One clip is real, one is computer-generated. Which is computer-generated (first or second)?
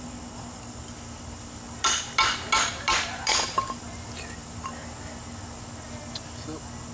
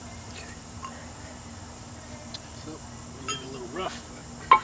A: second